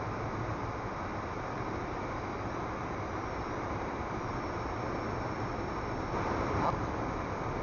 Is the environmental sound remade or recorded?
recorded